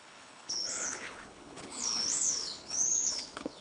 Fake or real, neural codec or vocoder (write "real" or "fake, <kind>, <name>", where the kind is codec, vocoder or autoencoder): fake, codec, HILCodec